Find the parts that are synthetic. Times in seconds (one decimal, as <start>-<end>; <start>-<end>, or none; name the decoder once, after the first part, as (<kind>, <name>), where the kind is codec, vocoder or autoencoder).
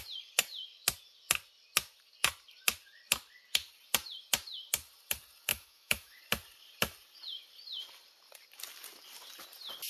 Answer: 5.5-6.2 (autoencoder, DAC-VAE)